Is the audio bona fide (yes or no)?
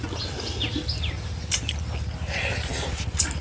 yes